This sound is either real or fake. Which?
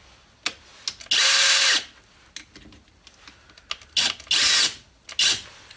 real